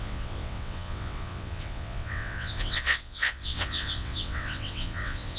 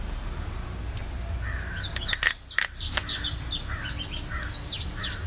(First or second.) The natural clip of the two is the second